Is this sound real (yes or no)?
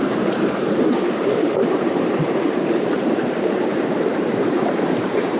no